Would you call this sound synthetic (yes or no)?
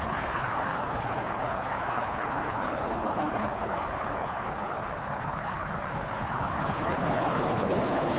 yes